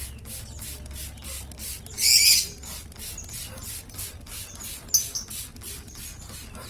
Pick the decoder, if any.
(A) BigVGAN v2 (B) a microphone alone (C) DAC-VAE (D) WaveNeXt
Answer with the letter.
B